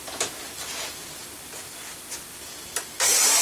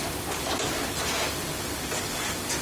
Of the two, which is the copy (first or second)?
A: first